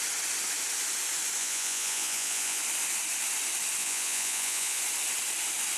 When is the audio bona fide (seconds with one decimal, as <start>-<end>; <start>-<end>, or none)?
0.0-1.4; 2.6-3.8; 4.8-5.8